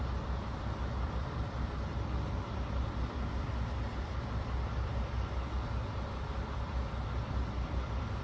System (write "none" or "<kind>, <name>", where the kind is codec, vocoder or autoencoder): vocoder, BigVGAN v2